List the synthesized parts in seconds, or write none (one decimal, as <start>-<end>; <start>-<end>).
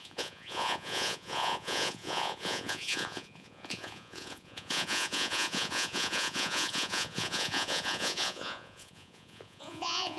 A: 0.0-10.2